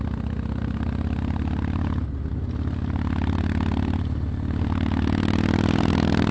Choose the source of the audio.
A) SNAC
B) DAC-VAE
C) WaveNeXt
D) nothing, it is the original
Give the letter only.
D